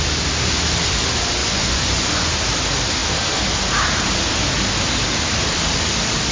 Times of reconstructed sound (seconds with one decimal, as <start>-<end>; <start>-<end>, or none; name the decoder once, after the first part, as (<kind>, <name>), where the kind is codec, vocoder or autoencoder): 1.4-2.3 (vocoder, Vocos)